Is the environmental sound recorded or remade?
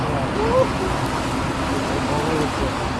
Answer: recorded